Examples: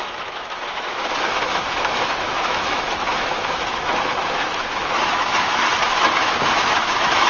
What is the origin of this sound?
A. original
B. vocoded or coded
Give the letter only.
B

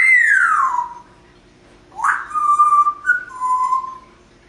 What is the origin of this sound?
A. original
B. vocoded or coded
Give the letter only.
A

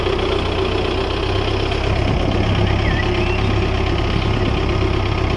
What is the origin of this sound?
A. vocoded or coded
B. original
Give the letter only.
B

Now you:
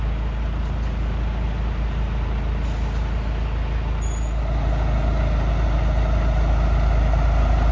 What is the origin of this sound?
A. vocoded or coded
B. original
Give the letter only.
B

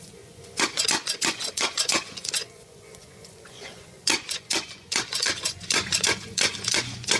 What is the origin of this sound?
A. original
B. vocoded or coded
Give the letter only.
B